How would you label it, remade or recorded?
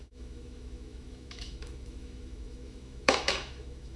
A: remade